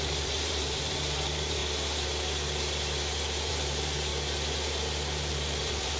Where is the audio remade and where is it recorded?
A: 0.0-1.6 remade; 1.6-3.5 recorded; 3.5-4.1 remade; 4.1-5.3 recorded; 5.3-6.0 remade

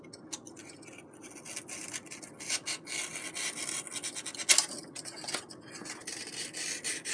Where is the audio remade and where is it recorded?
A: 0.0-7.1 recorded

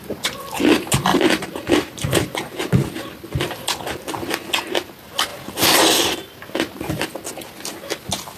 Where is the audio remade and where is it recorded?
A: 0.0-1.1 recorded; 1.1-2.1 remade; 2.1-8.4 recorded

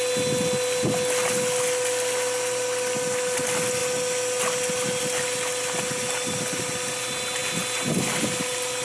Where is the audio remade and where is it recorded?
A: 0.0-8.8 recorded

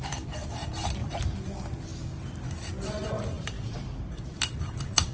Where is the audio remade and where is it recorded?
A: 0.0-5.1 remade